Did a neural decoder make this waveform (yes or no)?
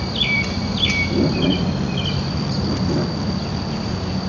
no